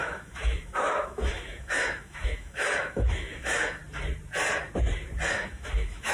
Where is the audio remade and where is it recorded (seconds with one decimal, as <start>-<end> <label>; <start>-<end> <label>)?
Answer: 0.0-3.8 remade; 3.8-5.3 recorded; 5.3-6.1 remade